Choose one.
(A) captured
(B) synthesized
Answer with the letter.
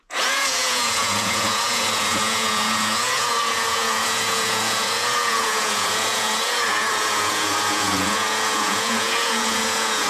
B